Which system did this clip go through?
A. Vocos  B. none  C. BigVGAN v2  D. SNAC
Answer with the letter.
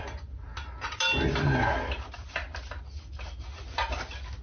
B